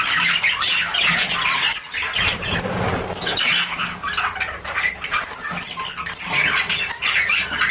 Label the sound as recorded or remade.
recorded